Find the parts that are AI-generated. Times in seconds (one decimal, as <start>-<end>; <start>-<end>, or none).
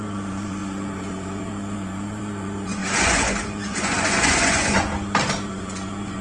0.0-4.9; 5.5-6.2